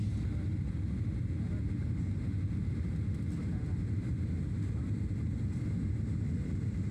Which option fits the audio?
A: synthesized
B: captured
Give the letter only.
B